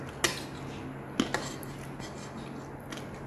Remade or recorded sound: recorded